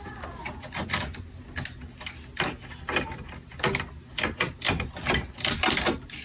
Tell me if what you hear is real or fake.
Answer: real